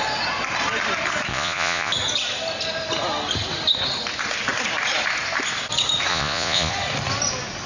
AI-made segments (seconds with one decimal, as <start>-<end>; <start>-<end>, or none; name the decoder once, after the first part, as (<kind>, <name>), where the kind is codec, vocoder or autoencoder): 1.3-1.9 (vocoder, Vocos); 6.1-6.7